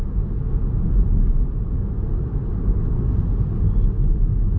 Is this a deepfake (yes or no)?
no